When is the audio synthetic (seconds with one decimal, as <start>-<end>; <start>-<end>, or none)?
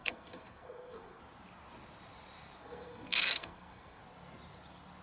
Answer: 0.0-1.2; 2.6-4.0